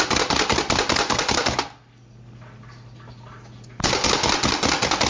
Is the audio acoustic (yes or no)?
yes